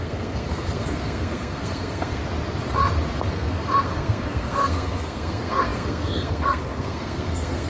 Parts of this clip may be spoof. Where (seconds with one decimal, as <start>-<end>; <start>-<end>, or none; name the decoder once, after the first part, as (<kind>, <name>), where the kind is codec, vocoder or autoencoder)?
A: 0.0-2.2 (codec, SNAC); 3.3-7.7

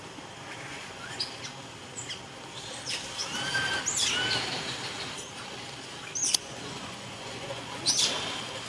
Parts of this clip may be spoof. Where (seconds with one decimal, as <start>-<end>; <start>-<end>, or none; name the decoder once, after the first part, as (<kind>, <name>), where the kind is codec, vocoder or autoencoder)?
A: 0.7-1.2 (vocoder, Vocos); 6.2-7.9